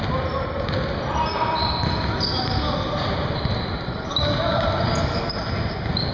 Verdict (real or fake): real